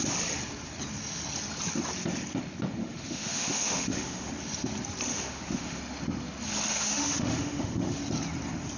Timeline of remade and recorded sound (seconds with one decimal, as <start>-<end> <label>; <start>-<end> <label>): 0.0-2.8 recorded; 2.8-4.3 remade; 4.3-5.1 recorded; 5.1-5.8 remade; 5.8-6.7 recorded; 6.7-8.0 remade; 8.0-8.8 recorded